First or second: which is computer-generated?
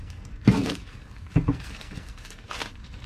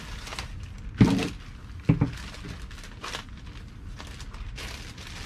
first